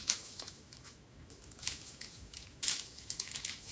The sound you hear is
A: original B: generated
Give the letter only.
B